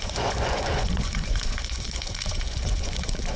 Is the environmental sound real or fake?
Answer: fake